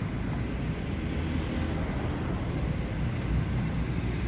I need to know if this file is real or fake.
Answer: real